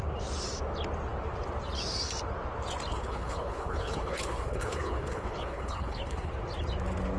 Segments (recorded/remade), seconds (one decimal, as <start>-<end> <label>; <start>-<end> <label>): 0.0-2.9 recorded; 2.9-6.3 remade; 6.3-7.2 recorded